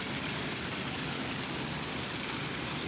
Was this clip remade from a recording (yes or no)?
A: no